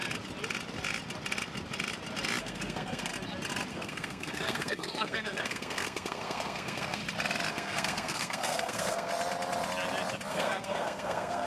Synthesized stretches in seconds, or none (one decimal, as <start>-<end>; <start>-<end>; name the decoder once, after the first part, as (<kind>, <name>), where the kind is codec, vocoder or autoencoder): 2.4-3.1 (codec, SNAC); 3.7-7.0; 7.5-9.1; 10.3-11.5